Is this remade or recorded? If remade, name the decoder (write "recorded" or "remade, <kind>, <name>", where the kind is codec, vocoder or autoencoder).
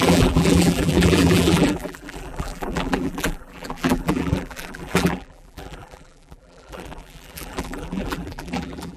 remade, vocoder, BigVGAN v2